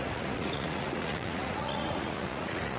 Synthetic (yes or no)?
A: yes